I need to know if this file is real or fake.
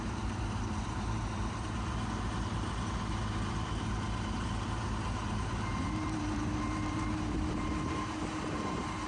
fake